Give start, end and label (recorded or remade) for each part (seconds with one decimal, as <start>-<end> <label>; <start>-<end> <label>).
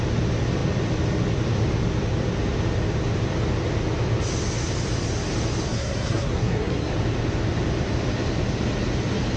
0.0-5.7 recorded; 5.7-6.9 remade; 6.9-9.4 recorded